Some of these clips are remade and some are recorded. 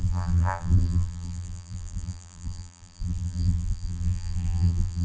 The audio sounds remade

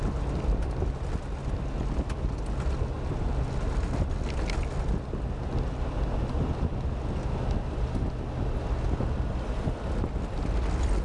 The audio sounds recorded